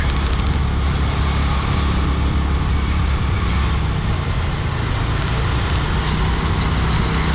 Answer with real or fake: real